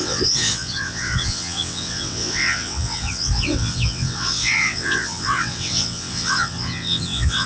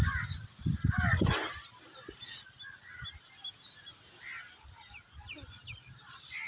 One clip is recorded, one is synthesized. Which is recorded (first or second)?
second